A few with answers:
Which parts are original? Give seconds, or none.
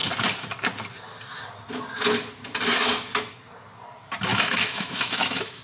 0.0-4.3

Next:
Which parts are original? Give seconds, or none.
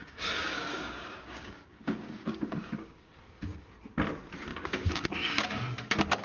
3.6-4.5; 5.6-6.2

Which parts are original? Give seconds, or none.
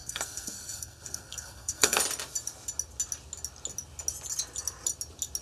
2.0-5.4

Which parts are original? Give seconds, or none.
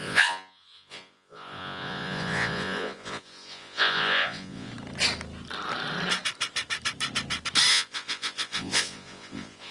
4.7-7.7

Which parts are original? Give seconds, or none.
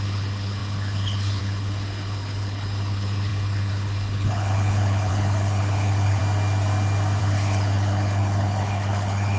6.2-7.2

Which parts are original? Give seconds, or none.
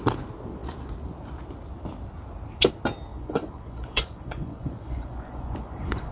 0.0-3.1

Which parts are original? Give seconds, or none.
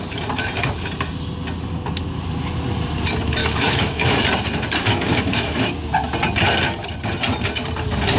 0.0-3.4; 4.2-4.8; 5.7-8.2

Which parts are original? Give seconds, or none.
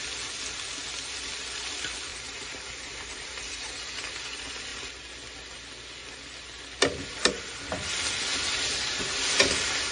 0.0-2.1; 3.4-8.3